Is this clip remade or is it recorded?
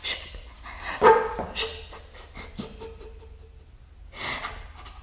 recorded